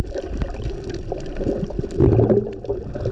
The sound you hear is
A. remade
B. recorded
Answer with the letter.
B